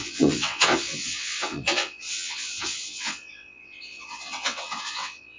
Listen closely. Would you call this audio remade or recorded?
remade